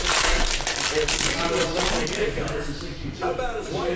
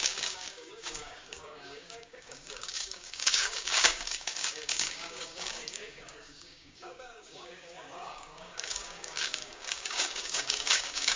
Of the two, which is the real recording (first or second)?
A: first